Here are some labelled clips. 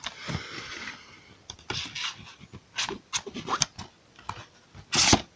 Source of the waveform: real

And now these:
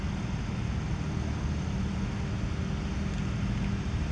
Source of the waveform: real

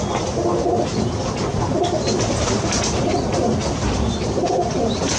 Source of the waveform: real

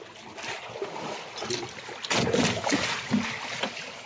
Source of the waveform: real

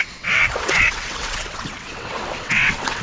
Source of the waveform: fake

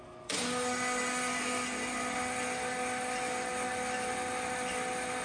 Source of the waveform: real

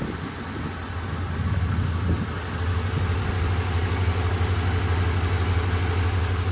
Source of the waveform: real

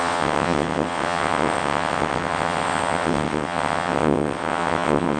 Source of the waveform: fake